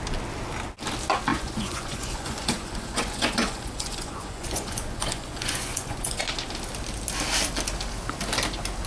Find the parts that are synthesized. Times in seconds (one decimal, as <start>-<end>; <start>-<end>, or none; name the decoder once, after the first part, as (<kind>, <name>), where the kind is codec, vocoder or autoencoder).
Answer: 1.3-6.2 (vocoder, Vocos)